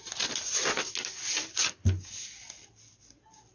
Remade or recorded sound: recorded